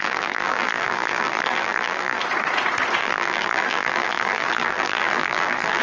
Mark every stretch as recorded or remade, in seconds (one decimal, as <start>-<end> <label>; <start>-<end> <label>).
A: 0.0-2.2 remade; 2.2-3.0 recorded; 3.0-5.8 remade